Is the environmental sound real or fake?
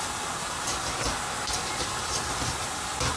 real